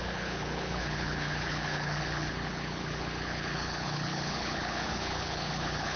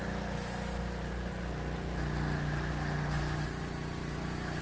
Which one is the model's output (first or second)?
first